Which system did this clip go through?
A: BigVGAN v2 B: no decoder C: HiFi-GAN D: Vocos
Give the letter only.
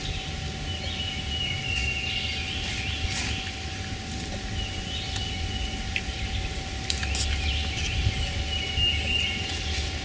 B